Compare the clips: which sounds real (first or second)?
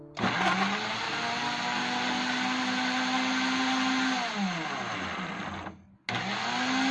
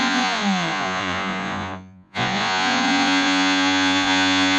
first